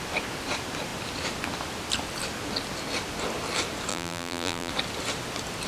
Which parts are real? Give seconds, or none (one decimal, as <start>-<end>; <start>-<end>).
0.0-3.9; 4.7-5.7